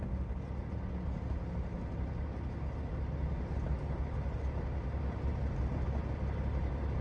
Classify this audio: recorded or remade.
recorded